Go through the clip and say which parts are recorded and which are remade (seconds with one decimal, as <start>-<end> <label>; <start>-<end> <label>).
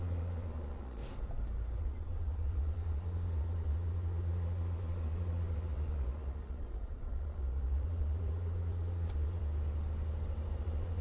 0.0-1.0 remade; 1.0-1.8 recorded; 1.8-9.4 remade; 9.4-10.6 recorded; 10.6-11.0 remade